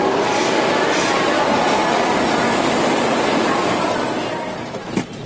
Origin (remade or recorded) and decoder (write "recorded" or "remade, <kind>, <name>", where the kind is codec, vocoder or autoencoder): recorded